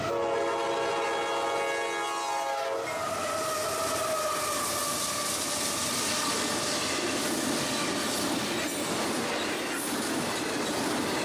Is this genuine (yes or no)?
yes